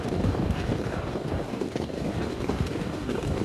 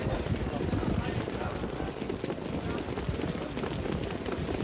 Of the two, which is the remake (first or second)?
first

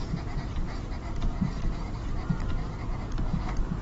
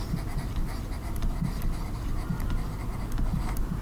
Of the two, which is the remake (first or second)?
first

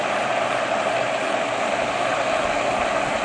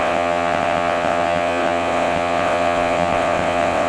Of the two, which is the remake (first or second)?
second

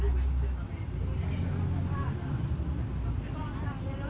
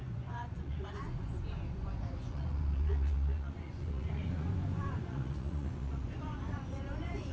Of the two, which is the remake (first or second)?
second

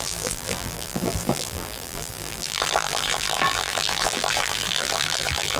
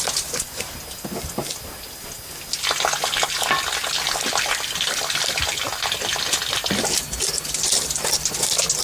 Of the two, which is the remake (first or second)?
first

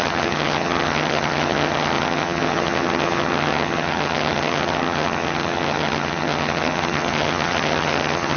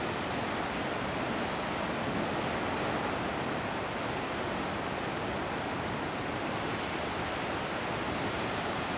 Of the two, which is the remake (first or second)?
first